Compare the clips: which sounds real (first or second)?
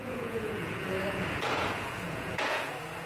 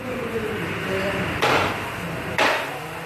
second